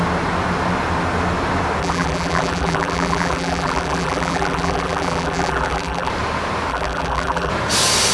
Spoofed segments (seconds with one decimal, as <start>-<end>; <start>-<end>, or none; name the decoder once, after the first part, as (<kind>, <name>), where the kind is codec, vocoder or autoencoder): 1.8-6.1 (vocoder, BigVGAN v2); 6.7-7.5